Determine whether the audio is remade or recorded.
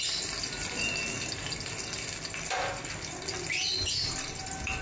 recorded